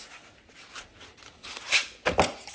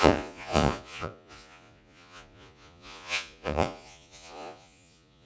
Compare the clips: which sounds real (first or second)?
first